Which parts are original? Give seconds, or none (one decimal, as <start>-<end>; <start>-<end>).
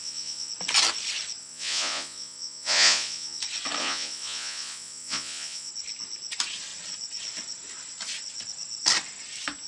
0.5-1.4; 3.4-3.8; 5.7-9.7